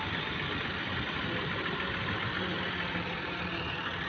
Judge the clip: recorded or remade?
recorded